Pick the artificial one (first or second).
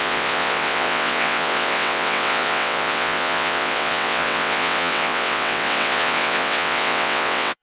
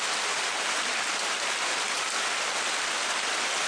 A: first